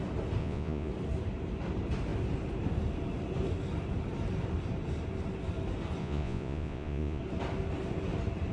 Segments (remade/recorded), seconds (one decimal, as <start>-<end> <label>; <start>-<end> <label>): 0.0-0.4 recorded; 0.4-0.9 remade; 0.9-6.0 recorded; 6.0-7.2 remade; 7.2-8.5 recorded